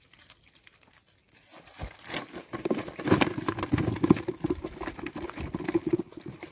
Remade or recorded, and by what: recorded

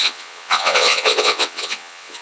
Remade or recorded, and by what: remade, vocoder, WaveNeXt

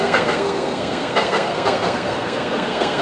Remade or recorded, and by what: remade, codec, SNAC